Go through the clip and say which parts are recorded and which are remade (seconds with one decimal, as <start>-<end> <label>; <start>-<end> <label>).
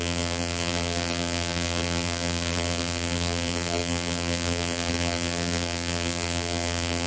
0.0-7.1 remade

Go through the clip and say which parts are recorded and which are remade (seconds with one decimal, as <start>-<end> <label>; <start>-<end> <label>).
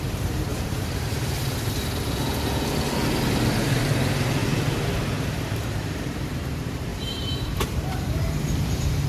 0.0-1.8 remade; 1.8-3.5 recorded; 3.5-4.4 remade; 4.4-5.4 recorded; 5.4-9.1 remade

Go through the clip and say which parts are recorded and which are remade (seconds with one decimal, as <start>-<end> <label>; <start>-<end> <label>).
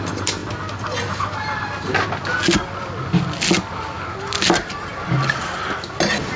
0.0-6.4 recorded